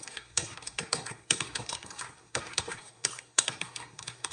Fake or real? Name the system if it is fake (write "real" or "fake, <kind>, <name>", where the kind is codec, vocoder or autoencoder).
fake, codec, SNAC